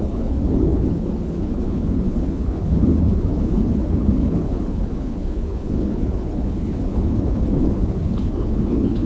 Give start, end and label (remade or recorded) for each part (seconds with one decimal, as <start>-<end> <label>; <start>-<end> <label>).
0.0-9.1 remade